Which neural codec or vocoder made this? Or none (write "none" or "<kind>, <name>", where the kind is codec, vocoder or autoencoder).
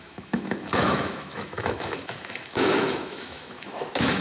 autoencoder, DAC-VAE